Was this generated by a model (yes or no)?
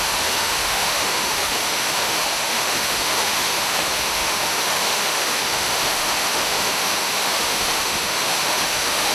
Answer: yes